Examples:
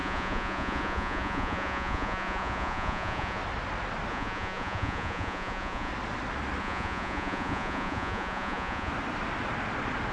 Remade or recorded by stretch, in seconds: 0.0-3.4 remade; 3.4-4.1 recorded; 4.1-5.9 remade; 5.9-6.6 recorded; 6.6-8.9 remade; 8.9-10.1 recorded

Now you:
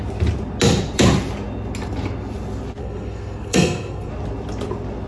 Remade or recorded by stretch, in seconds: 0.0-2.8 recorded; 2.8-4.1 remade; 4.1-5.1 recorded

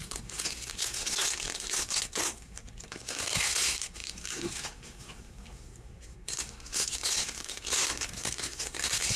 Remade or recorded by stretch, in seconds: 0.0-9.2 remade